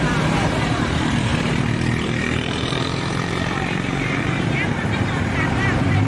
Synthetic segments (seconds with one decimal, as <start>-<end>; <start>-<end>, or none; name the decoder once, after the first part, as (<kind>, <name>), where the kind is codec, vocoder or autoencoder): 0.0-6.1 (vocoder, BigVGAN v2)